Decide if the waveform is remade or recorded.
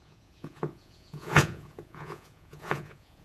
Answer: remade